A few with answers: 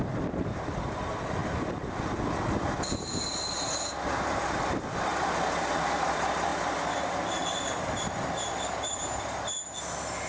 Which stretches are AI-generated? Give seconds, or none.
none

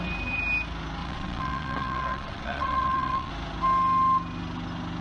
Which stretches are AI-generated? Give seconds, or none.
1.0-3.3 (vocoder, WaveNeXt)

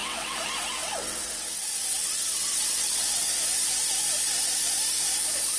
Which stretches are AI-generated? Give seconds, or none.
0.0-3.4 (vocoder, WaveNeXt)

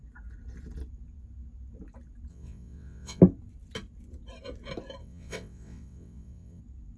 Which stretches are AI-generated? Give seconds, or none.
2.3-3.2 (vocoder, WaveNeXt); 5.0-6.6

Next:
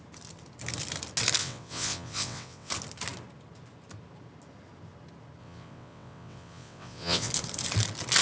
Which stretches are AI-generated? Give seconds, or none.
1.4-2.7 (vocoder, WaveNeXt); 5.4-7.3